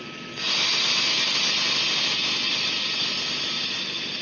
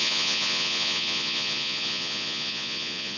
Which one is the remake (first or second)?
second